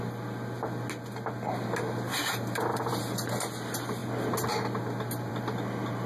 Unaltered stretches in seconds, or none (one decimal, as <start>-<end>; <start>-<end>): 0.0-2.1; 3.4-6.1